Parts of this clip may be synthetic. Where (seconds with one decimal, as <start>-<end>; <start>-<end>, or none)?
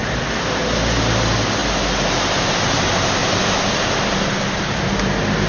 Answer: 0.0-0.6; 3.2-3.9